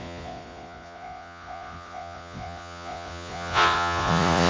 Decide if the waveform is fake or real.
fake